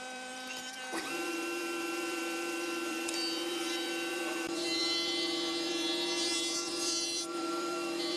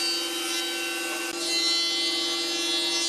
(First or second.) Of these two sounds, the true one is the second